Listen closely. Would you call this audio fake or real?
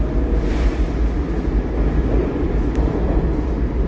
real